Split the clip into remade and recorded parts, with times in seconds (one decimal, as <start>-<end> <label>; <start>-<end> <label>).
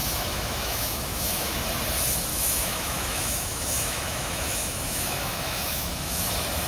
0.0-1.6 remade; 1.6-2.3 recorded; 2.3-6.3 remade; 6.3-6.7 recorded